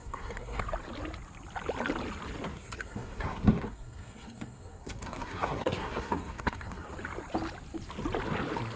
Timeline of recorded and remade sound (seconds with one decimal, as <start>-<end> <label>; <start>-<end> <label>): 0.0-0.6 remade; 0.6-2.5 recorded; 2.5-6.9 remade; 6.9-8.8 recorded